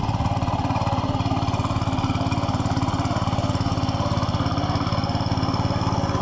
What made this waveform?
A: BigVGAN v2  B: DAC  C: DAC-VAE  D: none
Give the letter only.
D